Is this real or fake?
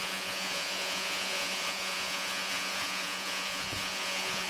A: fake